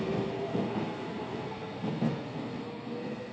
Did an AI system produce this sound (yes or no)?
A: yes